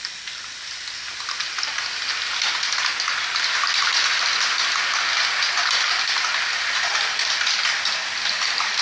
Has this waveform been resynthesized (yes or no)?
no